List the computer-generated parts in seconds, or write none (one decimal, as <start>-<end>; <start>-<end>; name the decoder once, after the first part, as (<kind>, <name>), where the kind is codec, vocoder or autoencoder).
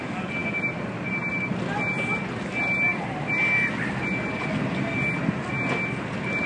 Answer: none